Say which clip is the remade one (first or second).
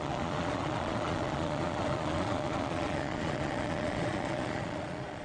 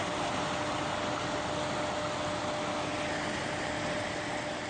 first